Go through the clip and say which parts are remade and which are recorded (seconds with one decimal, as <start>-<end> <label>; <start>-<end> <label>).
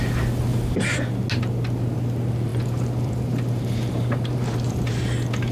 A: 0.0-0.5 recorded; 0.5-1.0 remade; 1.0-2.5 recorded; 2.5-4.9 remade; 4.9-5.5 recorded